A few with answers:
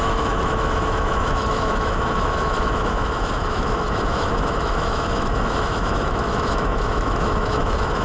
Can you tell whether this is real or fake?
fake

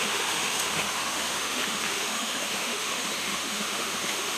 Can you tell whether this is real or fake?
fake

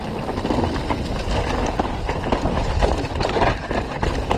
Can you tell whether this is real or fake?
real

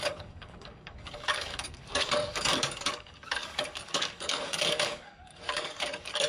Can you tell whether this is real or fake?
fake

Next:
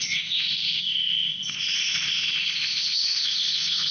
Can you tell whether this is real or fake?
fake